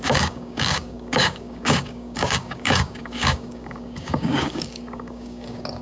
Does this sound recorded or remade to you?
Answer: remade